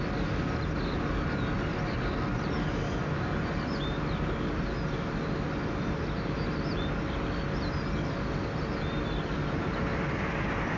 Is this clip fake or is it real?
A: real